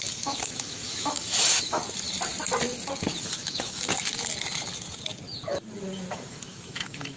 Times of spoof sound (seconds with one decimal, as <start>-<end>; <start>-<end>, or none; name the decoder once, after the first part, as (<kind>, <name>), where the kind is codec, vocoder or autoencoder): 0.0-1.8 (autoencoder, DAC-VAE); 3.2-3.9; 6.1-7.2